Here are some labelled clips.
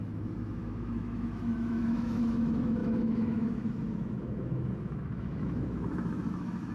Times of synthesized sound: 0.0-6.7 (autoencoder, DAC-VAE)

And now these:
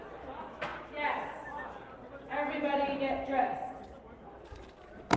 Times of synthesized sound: none

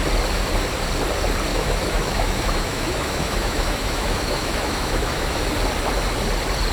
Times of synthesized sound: 1.5-5.5 (autoencoder, DAC-VAE)